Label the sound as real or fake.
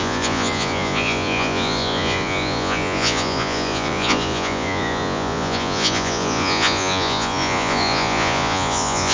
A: fake